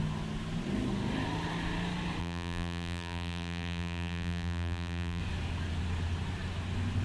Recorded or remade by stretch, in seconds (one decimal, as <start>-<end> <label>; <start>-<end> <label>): 0.0-2.2 recorded; 2.2-5.2 remade; 5.2-7.0 recorded